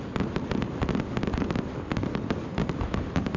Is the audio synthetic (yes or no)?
no